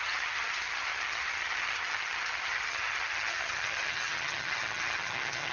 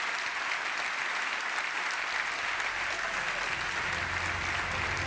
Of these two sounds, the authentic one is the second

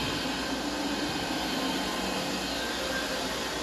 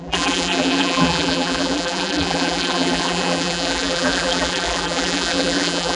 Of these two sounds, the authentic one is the first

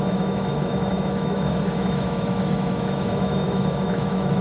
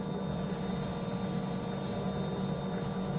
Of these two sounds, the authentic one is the second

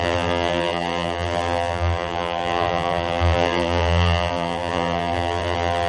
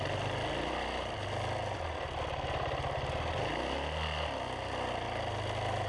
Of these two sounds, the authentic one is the second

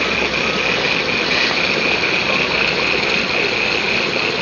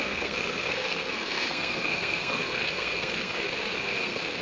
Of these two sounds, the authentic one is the first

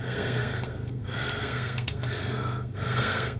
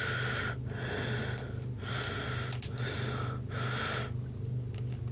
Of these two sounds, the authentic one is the second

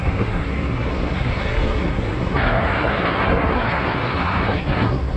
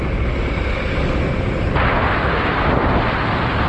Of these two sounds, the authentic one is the second